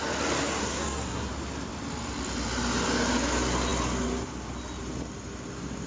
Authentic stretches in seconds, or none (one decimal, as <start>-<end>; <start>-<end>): 0.0-0.6; 1.3-5.9